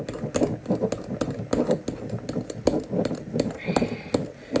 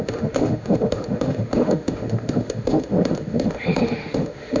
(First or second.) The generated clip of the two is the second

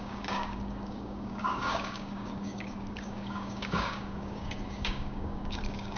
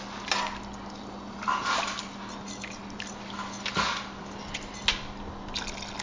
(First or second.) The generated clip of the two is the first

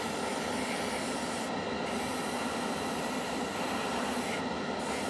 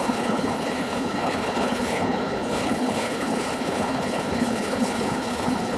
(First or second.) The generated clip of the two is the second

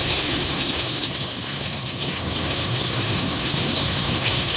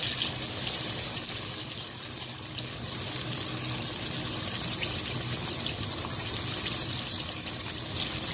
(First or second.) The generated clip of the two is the first